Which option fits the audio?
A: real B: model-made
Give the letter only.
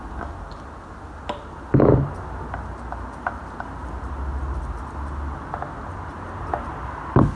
A